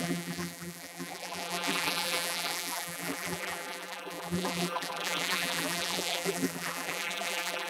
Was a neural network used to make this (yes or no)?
yes